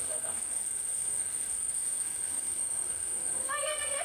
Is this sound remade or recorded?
remade